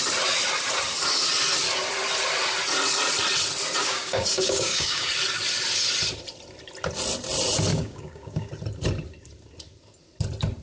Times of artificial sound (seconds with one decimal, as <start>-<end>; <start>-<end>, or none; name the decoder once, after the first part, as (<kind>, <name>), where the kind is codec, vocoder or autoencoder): 3.8-5.1 (codec, DAC); 7.7-8.5